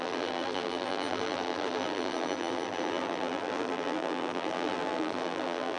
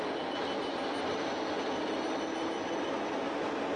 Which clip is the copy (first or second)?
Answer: first